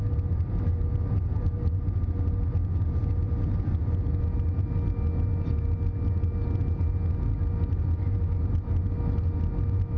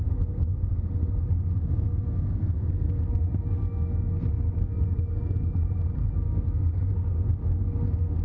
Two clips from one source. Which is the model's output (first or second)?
second